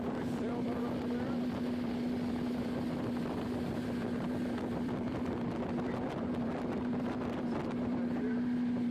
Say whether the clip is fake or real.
fake